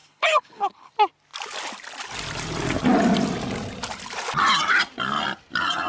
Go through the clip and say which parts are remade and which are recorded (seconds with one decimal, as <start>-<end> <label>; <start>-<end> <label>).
0.0-0.9 remade; 0.9-5.9 recorded